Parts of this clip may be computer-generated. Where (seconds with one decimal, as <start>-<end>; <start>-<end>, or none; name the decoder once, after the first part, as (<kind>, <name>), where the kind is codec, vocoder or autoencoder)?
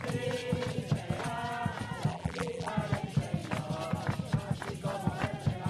2.1-2.7 (vocoder, BigVGAN v2)